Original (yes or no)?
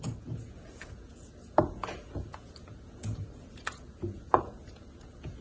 no